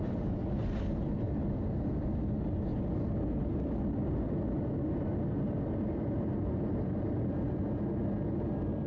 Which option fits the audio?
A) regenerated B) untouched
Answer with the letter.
B